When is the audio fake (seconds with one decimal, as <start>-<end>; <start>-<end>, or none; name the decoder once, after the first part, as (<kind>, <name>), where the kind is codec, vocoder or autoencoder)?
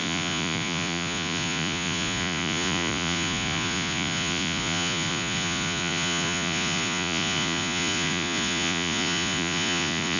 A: 0.0-10.2 (vocoder, Vocos)